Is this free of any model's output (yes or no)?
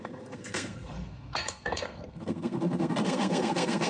no